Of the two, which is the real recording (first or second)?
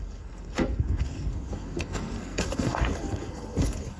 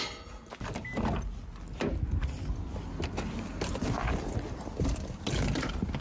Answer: second